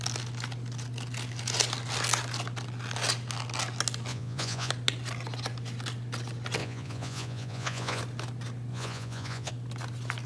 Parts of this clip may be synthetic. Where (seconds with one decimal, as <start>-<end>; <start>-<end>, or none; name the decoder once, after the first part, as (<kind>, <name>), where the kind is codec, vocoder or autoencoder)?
4.1-4.7 (vocoder, Vocos); 6.6-8.0; 8.7-9.5